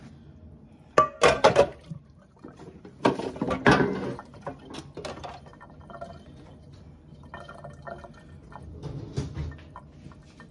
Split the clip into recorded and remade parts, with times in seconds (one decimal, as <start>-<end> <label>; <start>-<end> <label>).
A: 0.0-1.7 recorded; 1.7-4.6 remade; 4.6-5.5 recorded; 5.5-6.1 remade; 6.1-10.5 recorded

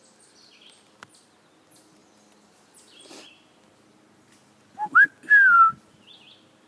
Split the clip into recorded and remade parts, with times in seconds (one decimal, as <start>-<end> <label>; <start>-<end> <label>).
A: 0.0-6.7 recorded

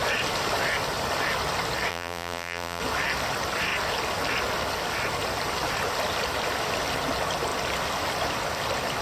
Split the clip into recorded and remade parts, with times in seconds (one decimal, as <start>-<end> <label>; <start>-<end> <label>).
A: 0.0-1.9 recorded; 1.9-2.8 remade; 2.8-9.0 recorded